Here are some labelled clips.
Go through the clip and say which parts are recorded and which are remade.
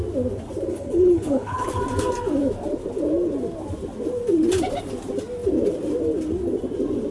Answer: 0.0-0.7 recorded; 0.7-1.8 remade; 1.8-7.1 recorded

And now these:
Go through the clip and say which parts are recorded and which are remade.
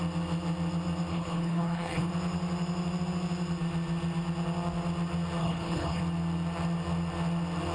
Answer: 0.0-1.1 recorded; 1.1-2.1 remade; 2.1-5.4 recorded; 5.4-6.0 remade; 6.0-7.7 recorded